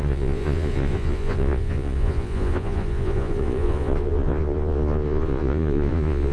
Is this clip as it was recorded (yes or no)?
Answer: no